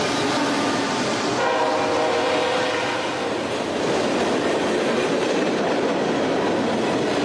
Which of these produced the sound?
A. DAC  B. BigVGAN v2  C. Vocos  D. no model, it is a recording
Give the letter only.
D